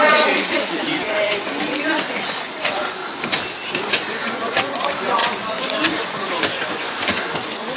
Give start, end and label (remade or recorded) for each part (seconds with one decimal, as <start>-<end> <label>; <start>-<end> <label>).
0.0-3.0 remade; 3.0-3.8 recorded; 3.8-7.8 remade

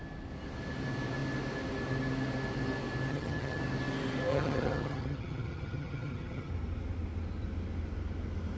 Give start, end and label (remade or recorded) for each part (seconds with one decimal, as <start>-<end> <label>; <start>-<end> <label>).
0.0-3.1 recorded; 3.1-3.6 remade; 3.6-4.3 recorded; 4.3-6.5 remade; 6.5-8.6 recorded

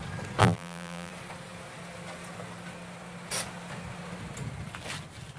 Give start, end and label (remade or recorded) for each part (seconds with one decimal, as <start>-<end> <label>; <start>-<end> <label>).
0.0-0.4 recorded; 0.4-1.1 remade; 1.1-5.4 recorded

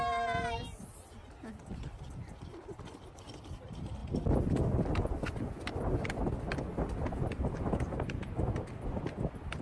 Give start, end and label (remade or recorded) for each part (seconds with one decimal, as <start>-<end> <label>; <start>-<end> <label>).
0.0-9.6 recorded

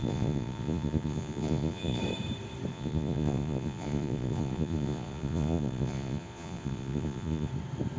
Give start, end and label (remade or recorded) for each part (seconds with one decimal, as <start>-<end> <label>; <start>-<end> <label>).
0.0-2.0 remade; 2.0-2.7 recorded; 2.7-7.5 remade; 7.5-8.0 recorded

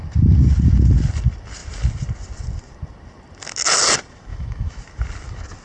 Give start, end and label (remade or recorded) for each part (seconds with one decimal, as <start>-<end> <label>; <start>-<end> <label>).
0.0-4.3 recorded; 4.3-4.8 remade; 4.8-5.6 recorded